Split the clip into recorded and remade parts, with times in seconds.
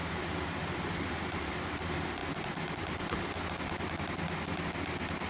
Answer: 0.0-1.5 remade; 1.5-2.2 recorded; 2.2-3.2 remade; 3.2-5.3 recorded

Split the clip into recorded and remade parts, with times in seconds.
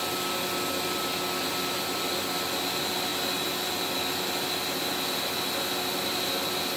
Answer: 0.0-6.8 recorded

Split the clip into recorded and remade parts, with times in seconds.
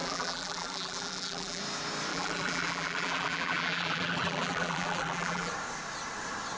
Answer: 0.0-1.6 remade; 1.6-2.1 recorded; 2.1-5.5 remade; 5.5-6.6 recorded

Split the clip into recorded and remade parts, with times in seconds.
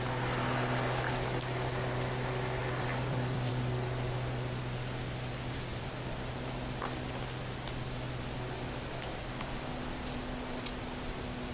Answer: 0.0-2.6 recorded; 2.6-3.5 remade; 3.5-5.7 recorded; 5.7-6.3 remade; 6.3-11.5 recorded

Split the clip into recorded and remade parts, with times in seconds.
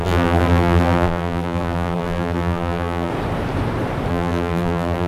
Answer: 0.0-3.1 remade; 3.1-4.1 recorded; 4.1-5.1 remade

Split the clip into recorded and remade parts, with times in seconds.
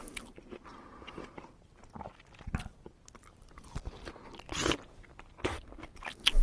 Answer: 0.0-0.7 recorded; 0.7-1.8 remade; 1.8-6.4 recorded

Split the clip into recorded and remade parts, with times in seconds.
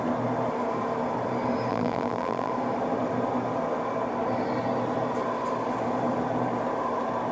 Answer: 0.0-1.7 recorded; 1.7-2.5 remade; 2.5-7.3 recorded